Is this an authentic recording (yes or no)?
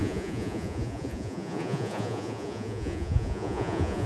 no